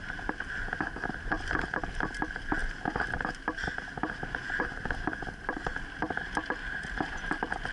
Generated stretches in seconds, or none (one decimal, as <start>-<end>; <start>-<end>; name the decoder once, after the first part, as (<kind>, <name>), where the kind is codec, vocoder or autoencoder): none